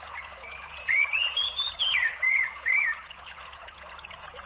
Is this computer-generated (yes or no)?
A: yes